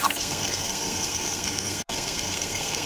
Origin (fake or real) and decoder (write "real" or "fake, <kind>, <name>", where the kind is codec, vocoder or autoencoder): fake, codec, SNAC